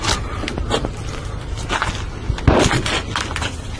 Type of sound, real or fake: real